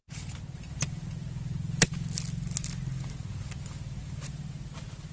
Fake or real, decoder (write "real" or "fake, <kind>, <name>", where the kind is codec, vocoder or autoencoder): real